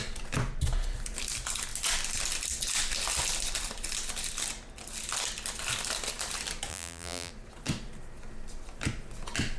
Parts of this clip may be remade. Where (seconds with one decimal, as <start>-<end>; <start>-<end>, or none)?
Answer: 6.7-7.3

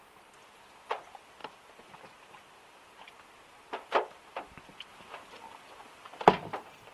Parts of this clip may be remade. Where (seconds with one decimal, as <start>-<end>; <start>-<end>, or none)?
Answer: 1.4-2.8; 4.9-6.2

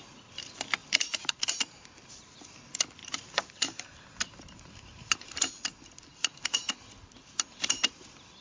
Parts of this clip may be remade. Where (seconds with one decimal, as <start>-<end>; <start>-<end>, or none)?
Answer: 0.8-1.4; 3.0-5.5